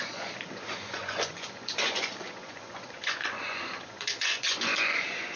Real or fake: fake